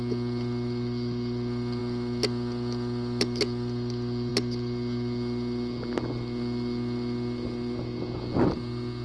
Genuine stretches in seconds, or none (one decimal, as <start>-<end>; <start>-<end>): 0.0-9.0